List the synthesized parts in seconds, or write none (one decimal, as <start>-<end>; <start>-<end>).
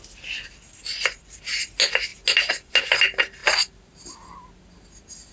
none